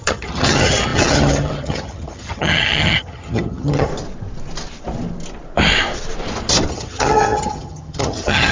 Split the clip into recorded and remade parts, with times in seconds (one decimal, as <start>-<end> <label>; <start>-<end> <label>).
0.0-3.9 remade; 3.9-6.7 recorded; 6.7-8.5 remade